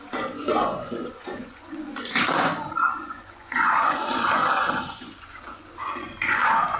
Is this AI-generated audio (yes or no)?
yes